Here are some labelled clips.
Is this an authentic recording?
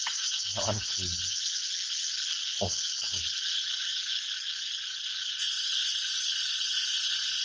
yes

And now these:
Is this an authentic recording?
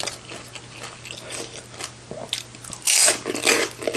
yes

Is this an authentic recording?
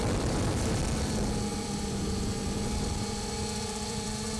no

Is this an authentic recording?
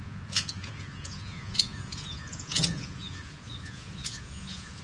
no